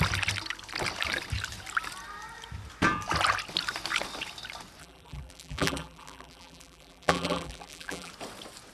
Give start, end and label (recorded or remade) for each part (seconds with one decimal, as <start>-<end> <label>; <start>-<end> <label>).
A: 0.0-4.8 recorded; 4.8-8.1 remade; 8.1-8.7 recorded